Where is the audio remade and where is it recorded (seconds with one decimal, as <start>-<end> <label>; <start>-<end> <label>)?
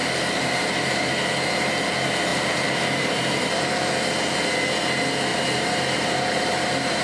0.0-1.1 remade; 1.1-2.3 recorded; 2.3-3.5 remade; 3.5-5.3 recorded; 5.3-7.0 remade